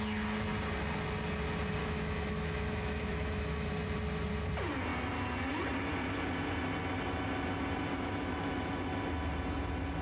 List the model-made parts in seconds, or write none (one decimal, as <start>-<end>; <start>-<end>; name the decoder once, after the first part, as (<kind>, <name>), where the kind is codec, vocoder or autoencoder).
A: 1.8-3.7 (autoencoder, DAC-VAE); 7.9-8.7